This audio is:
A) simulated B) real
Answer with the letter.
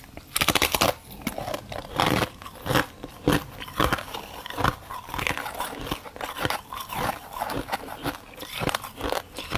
B